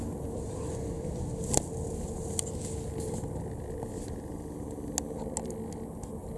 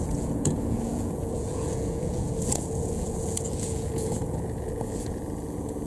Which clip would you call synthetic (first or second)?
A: second